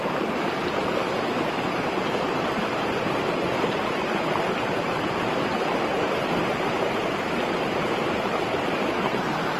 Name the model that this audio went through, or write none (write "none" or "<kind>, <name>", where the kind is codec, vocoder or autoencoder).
vocoder, BigVGAN v2